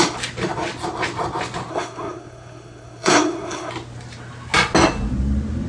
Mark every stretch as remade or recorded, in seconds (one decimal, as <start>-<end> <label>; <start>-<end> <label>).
0.0-1.7 recorded; 1.7-3.7 remade; 3.7-5.7 recorded